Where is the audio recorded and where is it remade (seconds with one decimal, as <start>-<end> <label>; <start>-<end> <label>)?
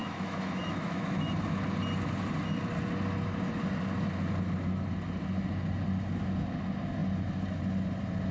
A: 0.0-1.3 remade; 1.3-8.3 recorded